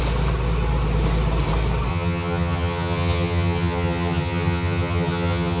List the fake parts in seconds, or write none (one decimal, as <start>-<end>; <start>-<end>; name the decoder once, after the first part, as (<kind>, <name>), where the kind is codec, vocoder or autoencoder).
1.9-5.6 (vocoder, HiFi-GAN)